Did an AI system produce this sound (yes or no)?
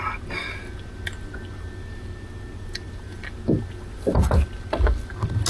no